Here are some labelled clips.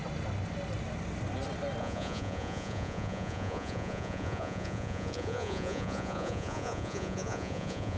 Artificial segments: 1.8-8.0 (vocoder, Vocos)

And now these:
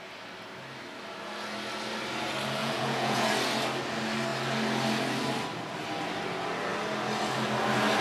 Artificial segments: 2.6-3.3 (vocoder, Vocos)

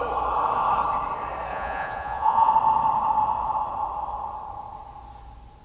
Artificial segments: 1.5-2.5 (vocoder, Vocos)

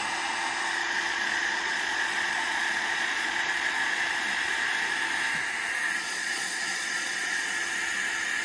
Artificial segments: 0.8-4.1 (vocoder, Vocos); 6.0-7.6

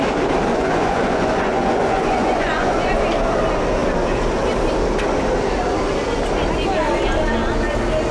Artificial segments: 0.5-3.0 (vocoder, Vocos)